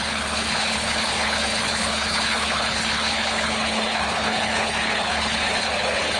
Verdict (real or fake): fake